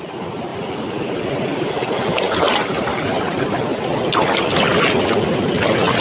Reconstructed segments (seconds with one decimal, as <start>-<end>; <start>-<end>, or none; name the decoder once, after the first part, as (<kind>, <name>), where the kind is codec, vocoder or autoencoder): none